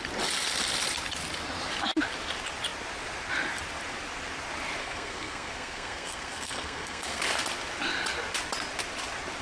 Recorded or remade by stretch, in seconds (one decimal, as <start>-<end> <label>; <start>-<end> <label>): 0.0-4.8 recorded; 4.8-7.2 remade; 7.2-9.4 recorded